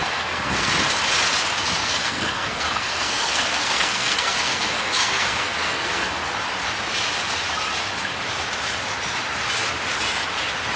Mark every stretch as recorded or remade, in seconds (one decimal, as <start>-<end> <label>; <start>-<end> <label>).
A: 0.0-0.7 remade; 0.7-1.8 recorded; 1.8-6.2 remade; 6.2-10.8 recorded